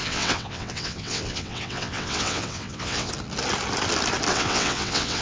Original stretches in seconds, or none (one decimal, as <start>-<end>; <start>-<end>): 3.1-4.3